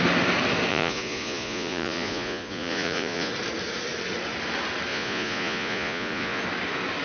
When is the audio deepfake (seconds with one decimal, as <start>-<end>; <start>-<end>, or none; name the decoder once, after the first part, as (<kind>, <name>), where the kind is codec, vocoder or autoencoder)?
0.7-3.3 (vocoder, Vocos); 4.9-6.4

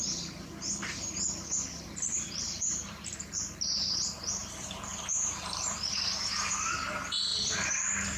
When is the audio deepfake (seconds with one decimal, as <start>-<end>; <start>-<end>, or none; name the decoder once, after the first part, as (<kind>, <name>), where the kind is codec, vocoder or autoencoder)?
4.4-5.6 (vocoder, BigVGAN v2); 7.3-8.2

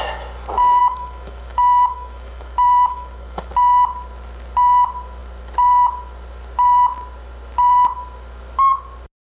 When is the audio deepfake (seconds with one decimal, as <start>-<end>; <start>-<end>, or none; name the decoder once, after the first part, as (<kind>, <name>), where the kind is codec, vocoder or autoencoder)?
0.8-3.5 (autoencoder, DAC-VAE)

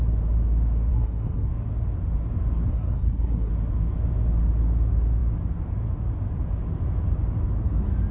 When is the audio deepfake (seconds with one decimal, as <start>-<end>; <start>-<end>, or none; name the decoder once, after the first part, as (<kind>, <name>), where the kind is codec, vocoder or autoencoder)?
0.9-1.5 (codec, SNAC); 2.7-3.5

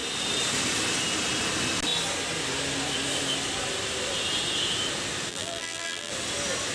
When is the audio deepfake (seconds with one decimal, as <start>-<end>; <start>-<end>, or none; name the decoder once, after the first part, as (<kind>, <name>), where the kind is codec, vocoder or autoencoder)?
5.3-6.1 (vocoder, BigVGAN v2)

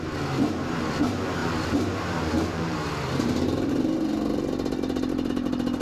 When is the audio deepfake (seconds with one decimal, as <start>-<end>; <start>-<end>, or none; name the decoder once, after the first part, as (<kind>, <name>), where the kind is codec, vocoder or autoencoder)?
1.4-3.7 (vocoder, BigVGAN v2)